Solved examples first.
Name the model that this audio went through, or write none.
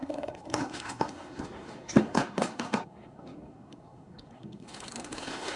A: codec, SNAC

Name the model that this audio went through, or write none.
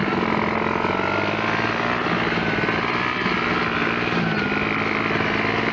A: none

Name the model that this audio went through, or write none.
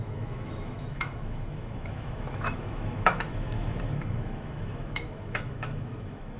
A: autoencoder, DAC-VAE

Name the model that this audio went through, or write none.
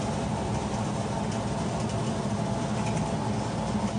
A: none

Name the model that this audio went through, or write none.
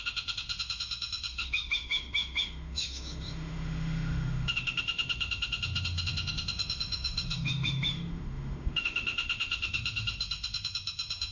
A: autoencoder, DAC-VAE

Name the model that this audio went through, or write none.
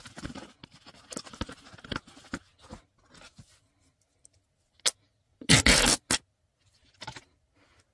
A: none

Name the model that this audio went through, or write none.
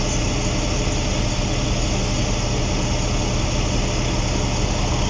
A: none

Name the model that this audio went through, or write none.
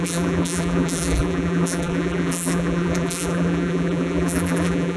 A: vocoder, BigVGAN v2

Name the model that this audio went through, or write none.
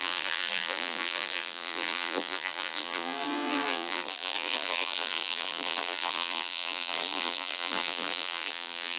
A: vocoder, BigVGAN v2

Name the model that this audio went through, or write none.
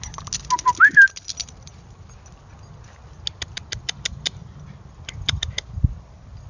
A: none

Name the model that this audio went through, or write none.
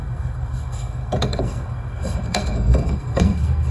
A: codec, SNAC